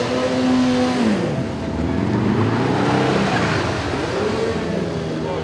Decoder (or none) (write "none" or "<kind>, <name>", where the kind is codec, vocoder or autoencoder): none